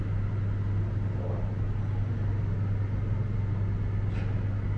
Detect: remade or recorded recorded